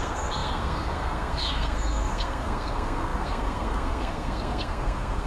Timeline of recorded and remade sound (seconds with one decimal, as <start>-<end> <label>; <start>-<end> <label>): 0.0-5.3 remade